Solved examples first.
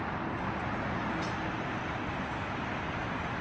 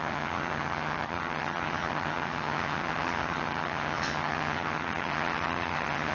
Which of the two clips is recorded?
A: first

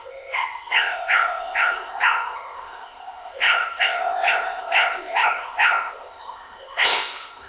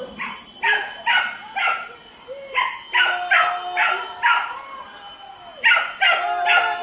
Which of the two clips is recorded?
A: second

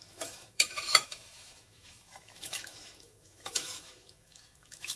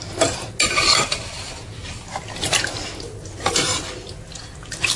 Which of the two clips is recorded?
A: second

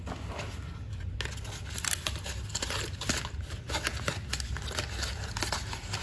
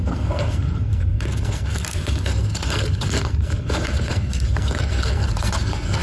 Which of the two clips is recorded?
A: first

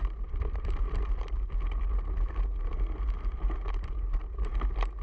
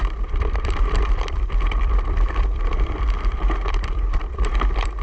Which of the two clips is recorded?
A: first